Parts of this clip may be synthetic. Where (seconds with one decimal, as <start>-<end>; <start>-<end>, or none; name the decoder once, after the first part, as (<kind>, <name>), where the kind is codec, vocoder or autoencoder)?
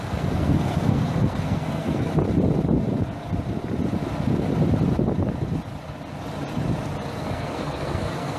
0.0-2.1 (codec, SNAC); 7.1-8.4